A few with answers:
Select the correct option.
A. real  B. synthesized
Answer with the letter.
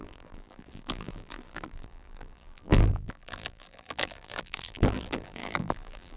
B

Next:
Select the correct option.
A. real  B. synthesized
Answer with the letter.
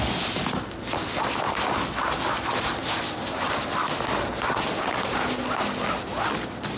A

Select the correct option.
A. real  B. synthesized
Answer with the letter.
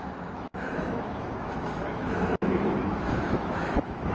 B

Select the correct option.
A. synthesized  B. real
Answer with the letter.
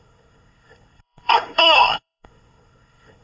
A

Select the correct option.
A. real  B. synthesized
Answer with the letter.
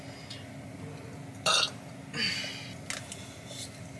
A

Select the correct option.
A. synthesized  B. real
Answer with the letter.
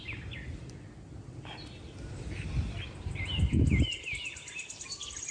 B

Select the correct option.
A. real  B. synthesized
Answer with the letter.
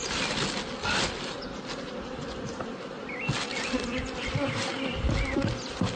A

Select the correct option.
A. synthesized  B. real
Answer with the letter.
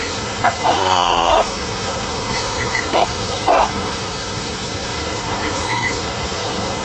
A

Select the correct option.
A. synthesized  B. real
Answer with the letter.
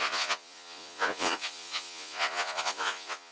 A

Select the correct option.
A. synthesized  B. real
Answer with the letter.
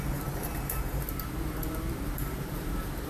A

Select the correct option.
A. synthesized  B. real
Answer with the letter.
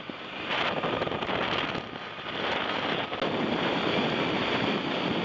B